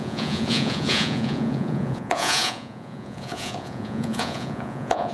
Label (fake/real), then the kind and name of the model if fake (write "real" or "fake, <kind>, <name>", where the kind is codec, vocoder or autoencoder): fake, vocoder, Vocos